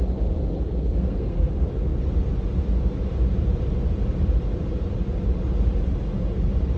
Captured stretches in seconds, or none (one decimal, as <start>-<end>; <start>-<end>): 0.0-0.7; 1.5-6.8